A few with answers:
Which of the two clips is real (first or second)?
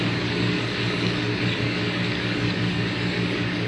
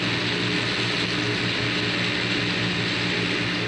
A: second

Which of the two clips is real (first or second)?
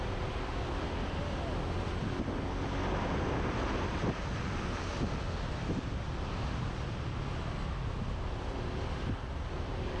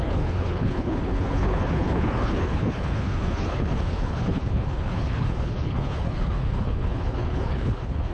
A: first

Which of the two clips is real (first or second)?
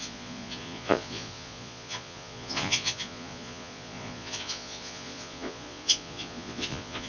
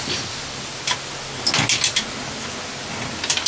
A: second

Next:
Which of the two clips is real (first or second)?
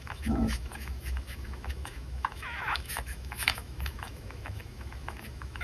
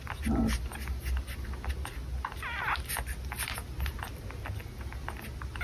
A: second